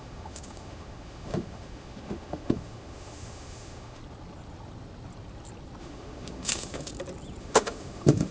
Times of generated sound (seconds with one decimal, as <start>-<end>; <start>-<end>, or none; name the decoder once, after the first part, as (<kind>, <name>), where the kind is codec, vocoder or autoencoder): 0.0-4.0 (autoencoder, DAC-VAE); 5.8-6.9; 7.4-8.3